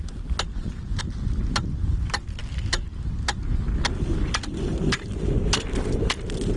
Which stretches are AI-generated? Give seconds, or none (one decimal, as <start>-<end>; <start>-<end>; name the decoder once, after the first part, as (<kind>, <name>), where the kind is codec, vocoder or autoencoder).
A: 0.5-1.0 (vocoder, Vocos)